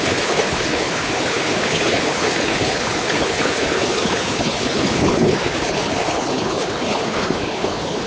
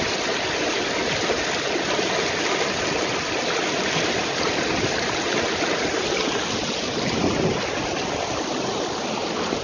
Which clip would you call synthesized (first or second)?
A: first